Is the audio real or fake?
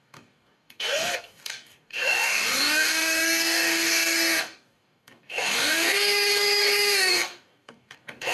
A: fake